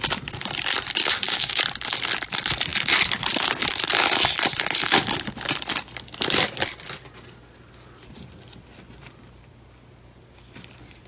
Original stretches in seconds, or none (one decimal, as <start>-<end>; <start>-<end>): 0.0-1.0; 1.6-11.1